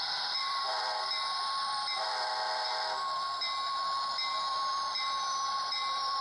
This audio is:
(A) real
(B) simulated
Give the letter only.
B